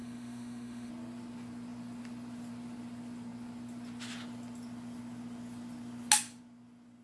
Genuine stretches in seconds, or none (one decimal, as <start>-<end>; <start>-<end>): 0.9-7.0